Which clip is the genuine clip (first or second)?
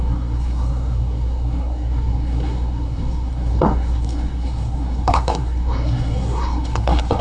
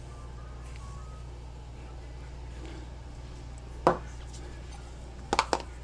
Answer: second